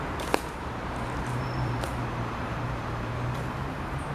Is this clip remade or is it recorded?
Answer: remade